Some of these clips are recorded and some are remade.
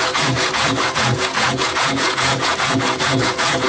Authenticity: remade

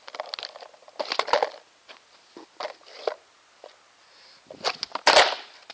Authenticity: recorded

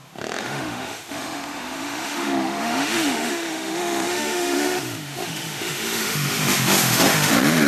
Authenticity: remade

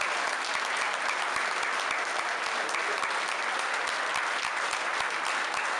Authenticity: recorded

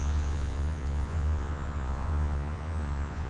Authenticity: remade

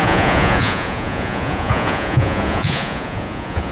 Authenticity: remade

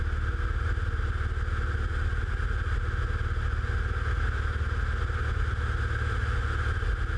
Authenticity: recorded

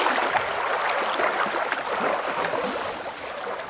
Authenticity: recorded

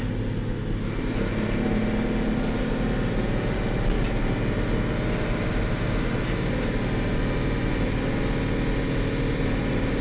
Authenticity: recorded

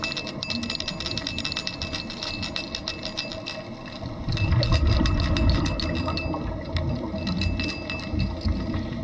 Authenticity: recorded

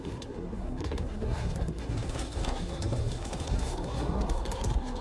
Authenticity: remade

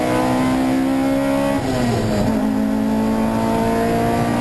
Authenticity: recorded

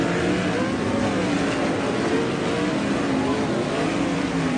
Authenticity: recorded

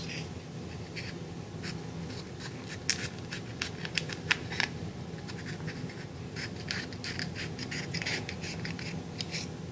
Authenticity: recorded